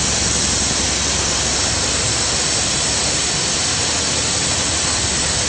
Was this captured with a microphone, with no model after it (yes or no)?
yes